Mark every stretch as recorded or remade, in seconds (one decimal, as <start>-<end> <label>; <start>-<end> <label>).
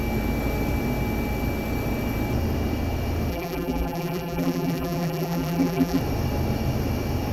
0.0-3.3 recorded; 3.3-6.0 remade; 6.0-7.3 recorded